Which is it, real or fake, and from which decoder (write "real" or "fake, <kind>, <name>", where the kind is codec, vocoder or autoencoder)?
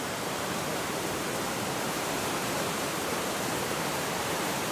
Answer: fake, vocoder, BigVGAN v2